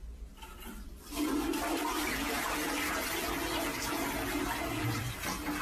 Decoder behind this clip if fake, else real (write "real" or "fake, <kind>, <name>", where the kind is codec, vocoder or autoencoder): real